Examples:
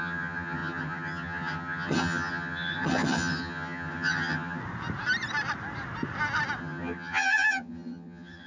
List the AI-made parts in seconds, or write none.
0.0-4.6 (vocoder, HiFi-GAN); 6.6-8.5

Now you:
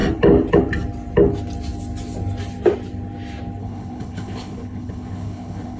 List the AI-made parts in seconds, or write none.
3.6-5.8 (codec, HILCodec)

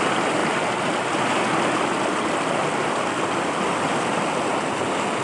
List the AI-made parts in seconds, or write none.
none

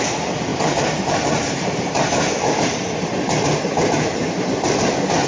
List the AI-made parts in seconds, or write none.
0.5-2.6 (vocoder, BigVGAN v2); 3.7-4.5

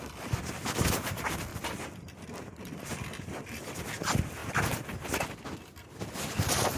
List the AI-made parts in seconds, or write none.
1.5-2.9 (vocoder, BigVGAN v2)